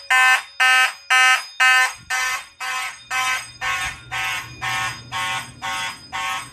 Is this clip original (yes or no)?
yes